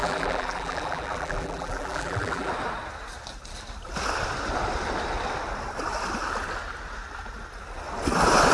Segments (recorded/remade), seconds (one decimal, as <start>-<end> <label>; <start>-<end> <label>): 0.0-2.5 remade; 2.5-8.5 recorded